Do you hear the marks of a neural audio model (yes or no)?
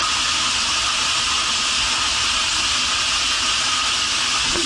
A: no